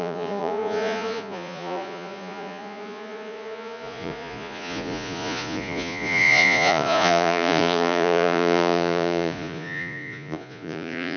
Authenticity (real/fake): fake